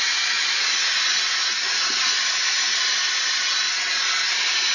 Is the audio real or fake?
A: real